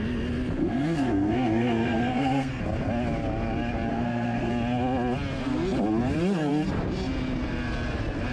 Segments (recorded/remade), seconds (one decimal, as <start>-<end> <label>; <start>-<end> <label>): 0.0-0.6 recorded; 0.6-2.6 remade; 2.6-3.9 recorded; 3.9-4.5 remade; 4.5-8.3 recorded